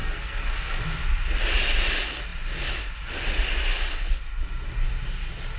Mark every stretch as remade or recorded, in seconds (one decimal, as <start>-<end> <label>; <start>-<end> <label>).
0.0-0.8 remade; 0.8-5.6 recorded